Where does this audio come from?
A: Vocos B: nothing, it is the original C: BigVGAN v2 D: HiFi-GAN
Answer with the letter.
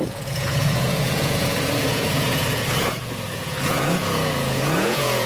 A